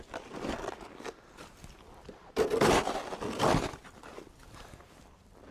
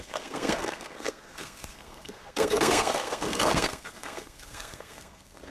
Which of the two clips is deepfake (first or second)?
second